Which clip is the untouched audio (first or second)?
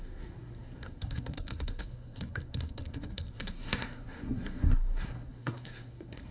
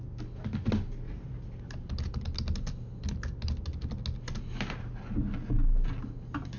second